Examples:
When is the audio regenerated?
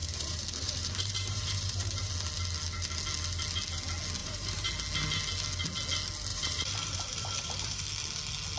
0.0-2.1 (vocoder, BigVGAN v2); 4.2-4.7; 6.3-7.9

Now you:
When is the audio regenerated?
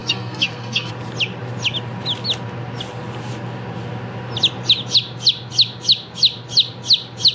0.0-0.9 (codec, SNAC)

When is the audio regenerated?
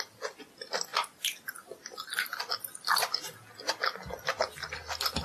2.7-4.1 (vocoder, BigVGAN v2)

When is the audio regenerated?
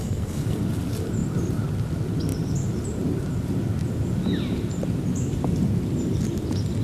0.0-0.6 (codec, SNAC)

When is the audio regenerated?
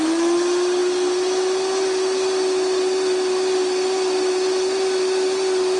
none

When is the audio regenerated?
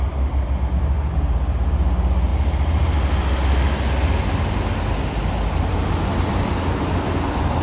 none